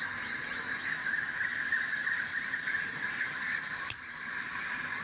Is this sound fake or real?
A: real